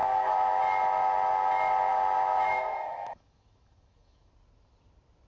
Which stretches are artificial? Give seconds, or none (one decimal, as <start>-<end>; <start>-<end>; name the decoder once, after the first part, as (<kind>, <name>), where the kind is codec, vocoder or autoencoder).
0.0-0.6 (autoencoder, DAC-VAE); 1.9-4.3